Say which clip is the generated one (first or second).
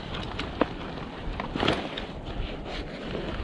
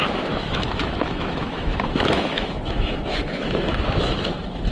second